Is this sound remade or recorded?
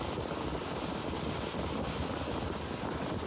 recorded